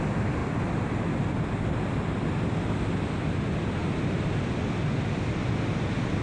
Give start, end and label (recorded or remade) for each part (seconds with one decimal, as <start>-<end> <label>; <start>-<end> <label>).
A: 0.0-6.2 recorded